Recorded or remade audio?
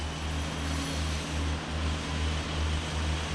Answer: recorded